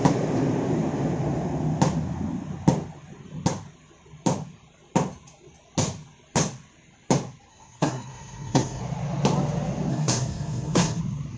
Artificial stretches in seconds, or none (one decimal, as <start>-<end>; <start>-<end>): 7.5-8.8; 9.9-11.0